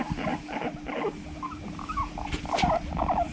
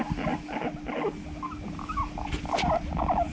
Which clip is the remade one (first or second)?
first